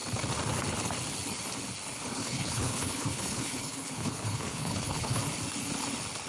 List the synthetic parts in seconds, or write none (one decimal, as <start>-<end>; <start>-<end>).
2.1-5.2